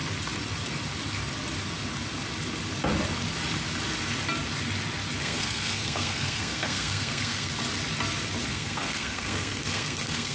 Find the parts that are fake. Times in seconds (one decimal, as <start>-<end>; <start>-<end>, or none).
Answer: 5.2-7.5; 8.5-10.3